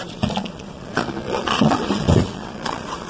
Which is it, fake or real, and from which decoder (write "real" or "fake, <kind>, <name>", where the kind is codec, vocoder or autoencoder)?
fake, vocoder, Vocos